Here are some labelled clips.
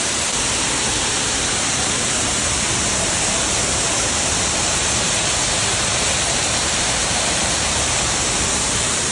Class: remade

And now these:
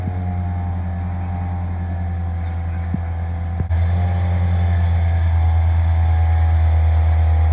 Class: recorded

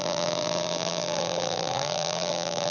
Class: remade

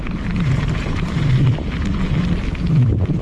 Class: remade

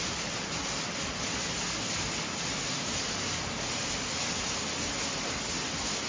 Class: recorded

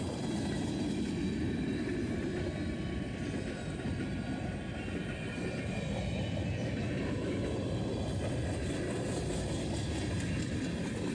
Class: recorded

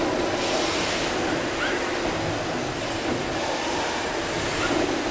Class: recorded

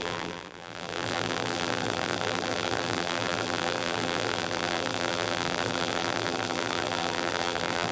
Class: remade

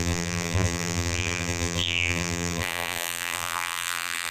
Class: remade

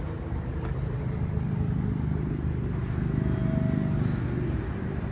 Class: recorded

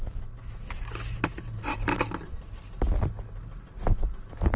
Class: recorded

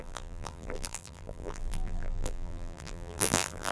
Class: remade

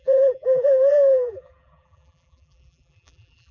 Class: remade